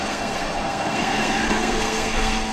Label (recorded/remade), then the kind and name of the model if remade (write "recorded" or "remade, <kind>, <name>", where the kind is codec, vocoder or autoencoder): remade, codec, SNAC